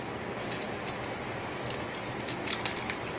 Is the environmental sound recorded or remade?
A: recorded